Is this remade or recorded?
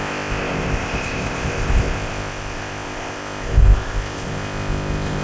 remade